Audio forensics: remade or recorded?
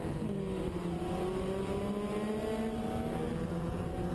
recorded